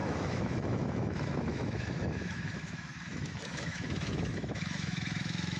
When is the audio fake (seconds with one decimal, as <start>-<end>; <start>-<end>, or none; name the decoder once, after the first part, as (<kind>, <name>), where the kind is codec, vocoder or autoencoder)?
0.0-5.6 (autoencoder, DAC-VAE)